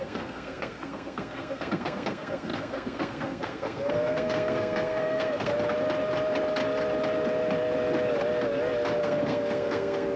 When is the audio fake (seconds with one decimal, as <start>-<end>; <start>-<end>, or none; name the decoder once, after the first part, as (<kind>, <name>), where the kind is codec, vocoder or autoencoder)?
0.0-5.5 (codec, SNAC); 9.0-10.2